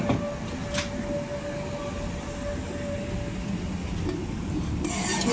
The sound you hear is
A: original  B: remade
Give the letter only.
A